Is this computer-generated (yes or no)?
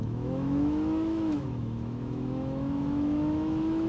yes